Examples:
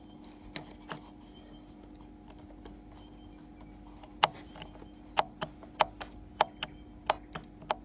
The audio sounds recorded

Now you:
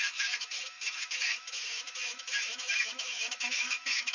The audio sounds remade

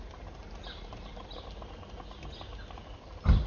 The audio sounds recorded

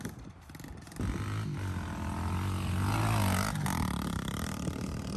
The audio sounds recorded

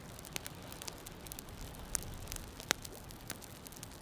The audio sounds recorded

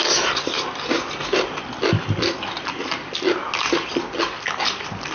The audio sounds recorded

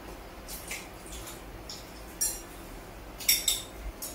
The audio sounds recorded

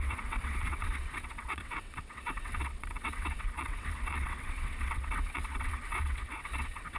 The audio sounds remade